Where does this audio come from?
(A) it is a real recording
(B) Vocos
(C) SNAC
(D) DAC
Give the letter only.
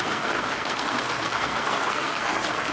C